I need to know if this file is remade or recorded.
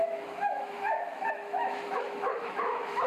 remade